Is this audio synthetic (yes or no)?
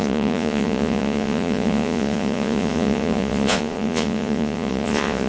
yes